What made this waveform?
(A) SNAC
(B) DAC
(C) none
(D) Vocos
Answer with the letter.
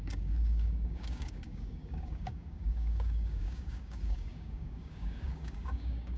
B